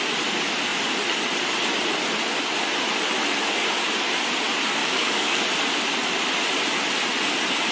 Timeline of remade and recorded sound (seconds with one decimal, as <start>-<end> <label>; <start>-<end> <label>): 0.0-4.8 recorded; 4.8-5.4 remade; 5.4-7.7 recorded